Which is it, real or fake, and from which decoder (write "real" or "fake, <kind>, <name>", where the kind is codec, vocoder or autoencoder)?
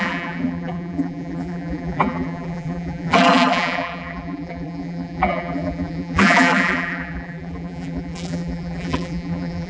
fake, vocoder, BigVGAN v2